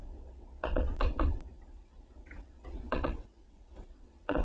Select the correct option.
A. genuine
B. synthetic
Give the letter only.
B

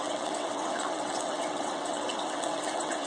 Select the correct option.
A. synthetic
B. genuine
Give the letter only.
A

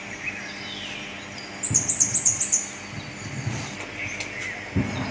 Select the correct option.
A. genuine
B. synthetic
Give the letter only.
A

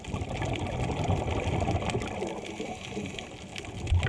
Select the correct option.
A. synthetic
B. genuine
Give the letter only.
B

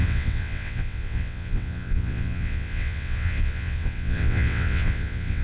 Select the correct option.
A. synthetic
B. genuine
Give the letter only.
A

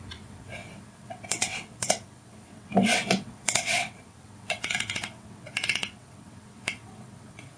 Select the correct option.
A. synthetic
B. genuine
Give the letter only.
A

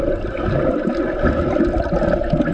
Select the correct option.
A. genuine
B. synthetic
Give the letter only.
A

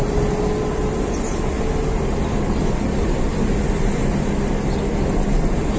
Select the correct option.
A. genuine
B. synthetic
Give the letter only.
A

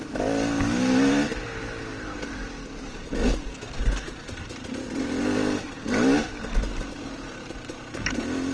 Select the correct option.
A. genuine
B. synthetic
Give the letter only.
A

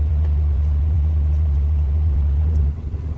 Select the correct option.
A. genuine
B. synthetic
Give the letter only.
B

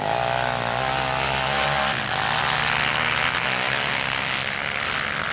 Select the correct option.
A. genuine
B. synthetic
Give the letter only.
A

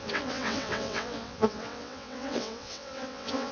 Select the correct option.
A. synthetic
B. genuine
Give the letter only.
A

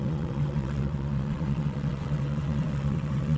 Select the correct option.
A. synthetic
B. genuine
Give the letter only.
A